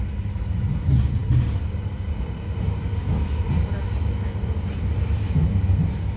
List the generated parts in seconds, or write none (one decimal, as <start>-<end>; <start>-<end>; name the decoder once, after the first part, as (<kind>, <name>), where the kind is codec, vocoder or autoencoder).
none